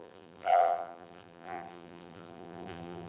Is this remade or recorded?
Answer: remade